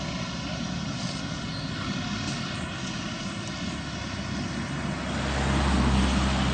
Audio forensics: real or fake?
real